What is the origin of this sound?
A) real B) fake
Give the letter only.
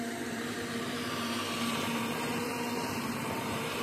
B